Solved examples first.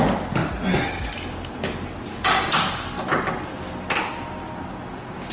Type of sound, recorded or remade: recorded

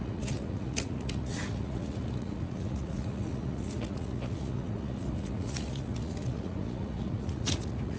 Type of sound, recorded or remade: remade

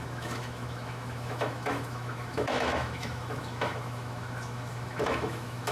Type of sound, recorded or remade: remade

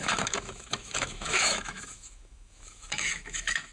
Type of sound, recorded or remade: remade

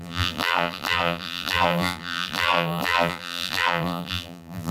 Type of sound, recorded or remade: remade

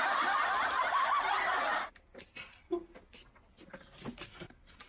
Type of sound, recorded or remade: recorded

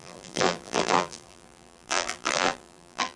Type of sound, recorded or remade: remade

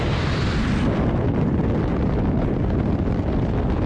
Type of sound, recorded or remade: recorded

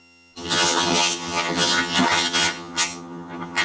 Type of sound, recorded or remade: remade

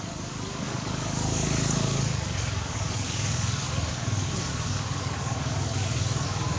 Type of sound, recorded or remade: remade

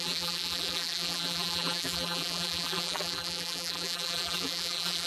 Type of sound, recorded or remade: remade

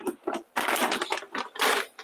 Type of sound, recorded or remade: recorded